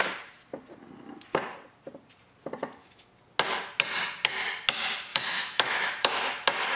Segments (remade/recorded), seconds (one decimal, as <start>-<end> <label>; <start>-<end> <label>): 0.0-2.6 recorded; 2.6-3.1 remade; 3.1-5.1 recorded; 5.1-6.1 remade; 6.1-6.8 recorded